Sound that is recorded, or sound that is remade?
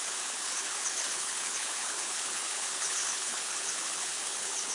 remade